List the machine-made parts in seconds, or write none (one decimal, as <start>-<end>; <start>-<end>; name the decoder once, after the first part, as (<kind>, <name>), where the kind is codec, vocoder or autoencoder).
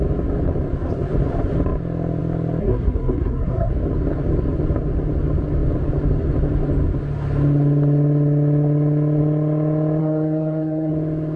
2.6-3.7 (codec, SNAC); 10.0-10.9